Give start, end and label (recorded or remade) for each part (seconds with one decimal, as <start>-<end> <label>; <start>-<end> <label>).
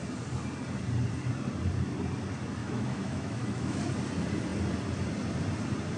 0.0-2.6 recorded; 2.6-3.8 remade; 3.8-6.0 recorded